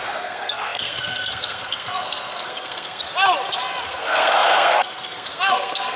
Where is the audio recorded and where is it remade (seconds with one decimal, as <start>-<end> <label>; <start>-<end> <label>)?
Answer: 0.0-3.0 remade; 3.0-3.9 recorded; 3.9-6.0 remade